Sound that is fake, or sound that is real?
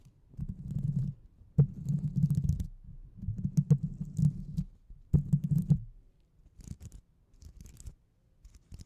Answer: real